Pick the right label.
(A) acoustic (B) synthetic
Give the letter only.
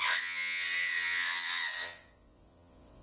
B